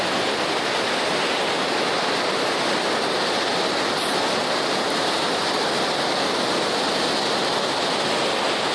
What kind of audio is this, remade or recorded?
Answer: recorded